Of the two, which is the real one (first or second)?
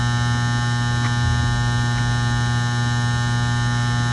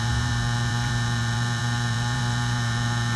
first